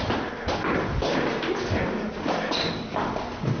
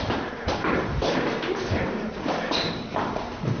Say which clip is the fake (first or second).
second